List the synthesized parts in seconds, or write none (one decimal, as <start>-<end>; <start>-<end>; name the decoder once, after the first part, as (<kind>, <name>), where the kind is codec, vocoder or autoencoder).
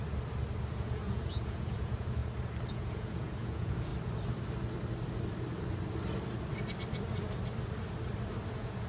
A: 0.7-2.2 (vocoder, Vocos); 2.7-3.9; 8.5-8.9